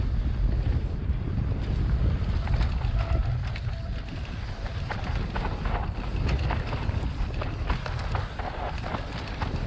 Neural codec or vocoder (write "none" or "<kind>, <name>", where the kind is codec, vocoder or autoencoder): none